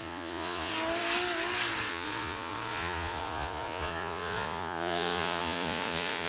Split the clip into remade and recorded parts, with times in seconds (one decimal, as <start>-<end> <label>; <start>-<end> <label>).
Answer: 0.0-0.7 remade; 0.7-1.9 recorded; 1.9-6.3 remade